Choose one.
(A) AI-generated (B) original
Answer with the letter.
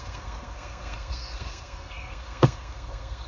A